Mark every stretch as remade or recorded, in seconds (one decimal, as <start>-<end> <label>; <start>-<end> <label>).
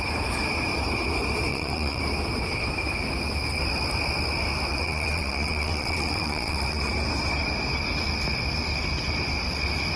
0.0-1.5 recorded; 1.5-2.0 remade; 2.0-4.7 recorded; 4.7-6.9 remade; 6.9-10.0 recorded